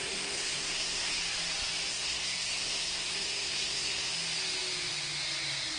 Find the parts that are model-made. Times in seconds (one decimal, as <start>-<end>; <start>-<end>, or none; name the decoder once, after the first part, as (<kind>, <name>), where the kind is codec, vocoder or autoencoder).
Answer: 0.0-1.2 (codec, SNAC); 1.9-4.1